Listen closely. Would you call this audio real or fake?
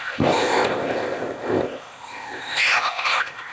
fake